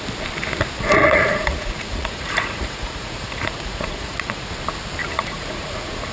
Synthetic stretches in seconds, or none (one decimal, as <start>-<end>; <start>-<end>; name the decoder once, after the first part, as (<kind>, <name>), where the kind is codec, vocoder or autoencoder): 1.0-4.5 (vocoder, Vocos); 5.0-6.1